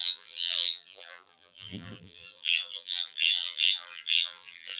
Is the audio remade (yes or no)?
yes